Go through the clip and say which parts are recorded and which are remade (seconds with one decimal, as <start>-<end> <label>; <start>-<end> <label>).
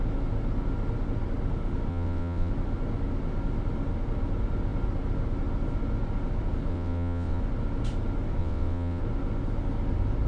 0.0-1.9 recorded; 1.9-2.5 remade; 2.5-6.7 recorded; 6.7-7.4 remade; 7.4-8.4 recorded; 8.4-9.0 remade; 9.0-10.3 recorded